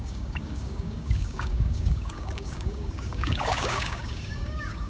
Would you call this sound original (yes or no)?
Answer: no